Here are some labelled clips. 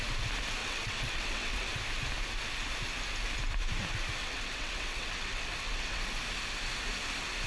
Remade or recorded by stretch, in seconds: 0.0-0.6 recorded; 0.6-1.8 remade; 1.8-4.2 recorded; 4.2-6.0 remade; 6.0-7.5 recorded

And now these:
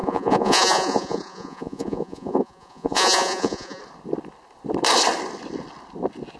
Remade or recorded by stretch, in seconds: 0.0-3.8 remade; 3.8-6.4 recorded

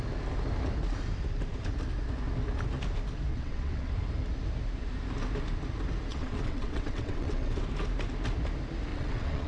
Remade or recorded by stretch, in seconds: 0.0-3.3 recorded; 3.3-3.9 remade; 3.9-6.1 recorded; 6.1-7.6 remade; 7.6-8.9 recorded; 8.9-9.5 remade